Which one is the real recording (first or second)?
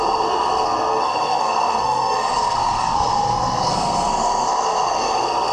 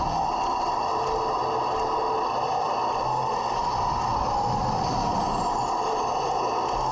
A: second